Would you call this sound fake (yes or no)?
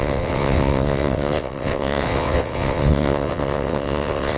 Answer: yes